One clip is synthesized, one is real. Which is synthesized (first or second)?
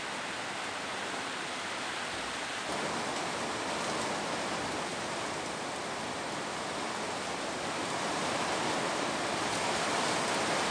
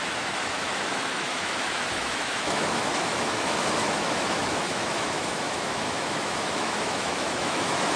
second